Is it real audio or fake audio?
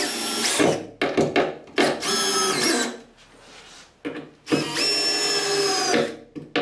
real